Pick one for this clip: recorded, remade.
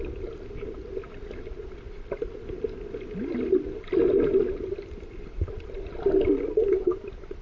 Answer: recorded